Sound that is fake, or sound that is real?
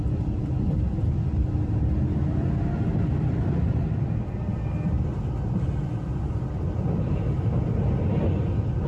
real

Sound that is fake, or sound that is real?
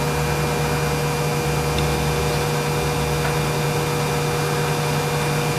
real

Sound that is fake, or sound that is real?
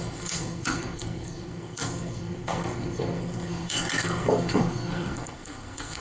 fake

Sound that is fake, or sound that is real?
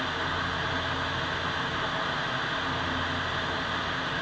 real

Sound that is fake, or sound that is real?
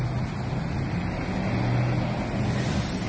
real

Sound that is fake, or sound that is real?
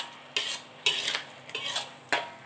real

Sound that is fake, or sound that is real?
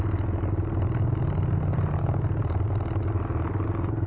real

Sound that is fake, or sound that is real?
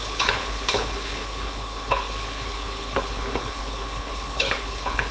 fake